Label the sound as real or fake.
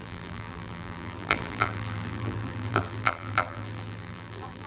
fake